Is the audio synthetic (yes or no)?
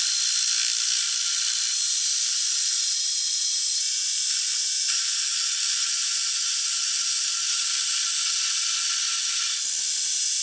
no